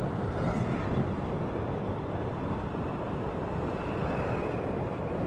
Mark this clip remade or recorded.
recorded